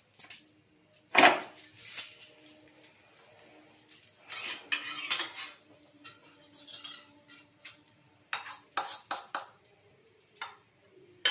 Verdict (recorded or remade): recorded